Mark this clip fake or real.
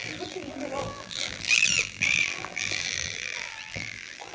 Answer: fake